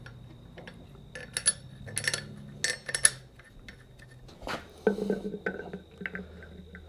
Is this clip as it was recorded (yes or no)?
yes